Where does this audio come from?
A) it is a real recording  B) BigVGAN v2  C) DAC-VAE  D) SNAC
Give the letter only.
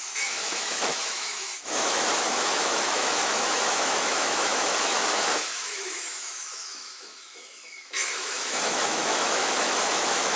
C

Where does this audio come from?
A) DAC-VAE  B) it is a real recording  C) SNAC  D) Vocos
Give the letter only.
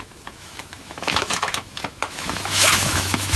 A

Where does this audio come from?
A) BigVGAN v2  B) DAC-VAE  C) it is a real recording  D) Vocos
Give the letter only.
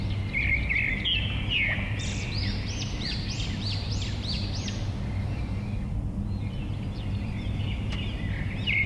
C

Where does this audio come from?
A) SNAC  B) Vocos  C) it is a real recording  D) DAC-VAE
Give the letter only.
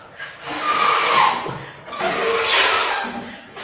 C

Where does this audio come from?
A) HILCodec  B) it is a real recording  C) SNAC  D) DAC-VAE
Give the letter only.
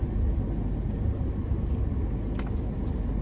B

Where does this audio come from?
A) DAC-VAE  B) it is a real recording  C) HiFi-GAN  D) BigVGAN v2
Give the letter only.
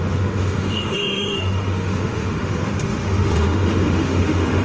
A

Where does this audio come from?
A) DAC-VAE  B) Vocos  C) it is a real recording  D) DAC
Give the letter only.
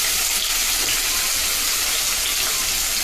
C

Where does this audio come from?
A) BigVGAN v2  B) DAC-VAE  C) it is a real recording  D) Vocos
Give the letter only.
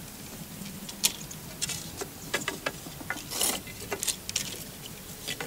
C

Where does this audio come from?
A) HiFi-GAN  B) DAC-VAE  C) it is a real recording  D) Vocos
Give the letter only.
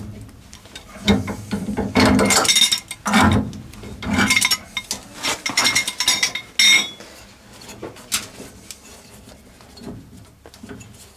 C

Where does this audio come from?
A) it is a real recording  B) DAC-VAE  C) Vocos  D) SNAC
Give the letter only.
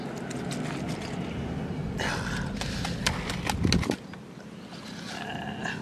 A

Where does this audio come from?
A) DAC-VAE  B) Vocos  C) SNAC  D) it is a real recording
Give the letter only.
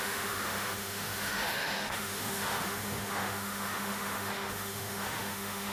A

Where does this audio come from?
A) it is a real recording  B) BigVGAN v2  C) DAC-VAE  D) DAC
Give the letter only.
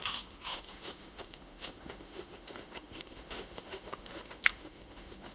C